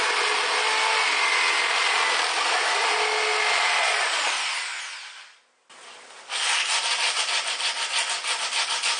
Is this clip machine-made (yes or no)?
no